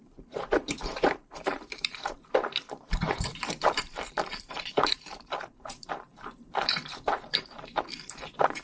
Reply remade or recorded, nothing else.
remade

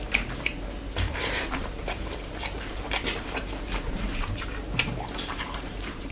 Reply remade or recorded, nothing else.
remade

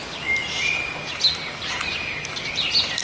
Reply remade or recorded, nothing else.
recorded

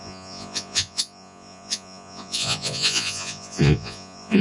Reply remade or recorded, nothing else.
remade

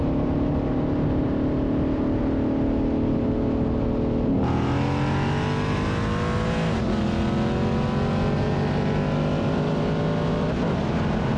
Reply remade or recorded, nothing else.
recorded